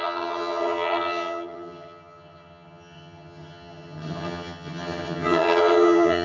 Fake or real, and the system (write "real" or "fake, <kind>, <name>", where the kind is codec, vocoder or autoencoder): fake, vocoder, HiFi-GAN